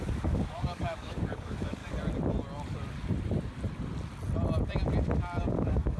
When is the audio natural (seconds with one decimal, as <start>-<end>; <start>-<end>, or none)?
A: 1.8-5.4